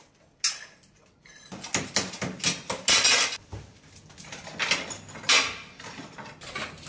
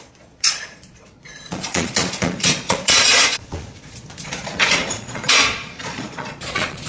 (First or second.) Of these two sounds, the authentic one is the first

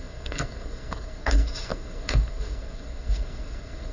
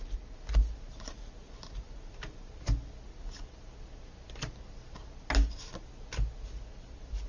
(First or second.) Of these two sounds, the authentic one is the second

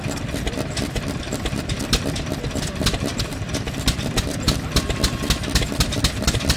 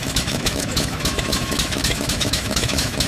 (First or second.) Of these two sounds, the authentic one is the first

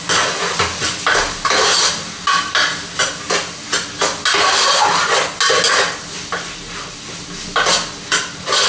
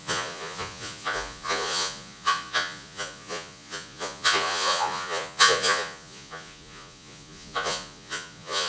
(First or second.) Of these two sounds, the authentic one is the first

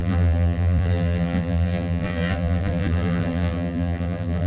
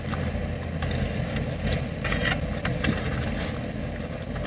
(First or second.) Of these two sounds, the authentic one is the second